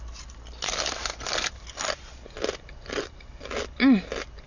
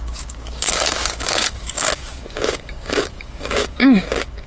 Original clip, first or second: first